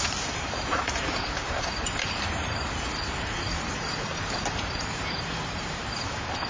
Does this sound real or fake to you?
fake